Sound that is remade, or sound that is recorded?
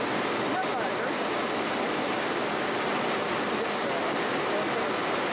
recorded